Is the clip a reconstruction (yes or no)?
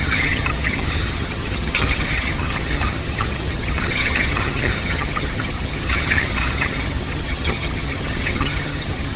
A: yes